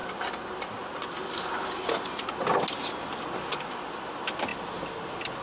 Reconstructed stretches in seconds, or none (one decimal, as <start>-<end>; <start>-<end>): none